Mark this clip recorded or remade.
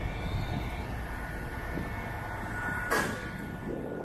recorded